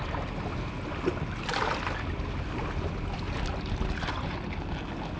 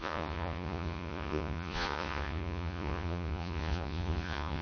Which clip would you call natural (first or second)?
first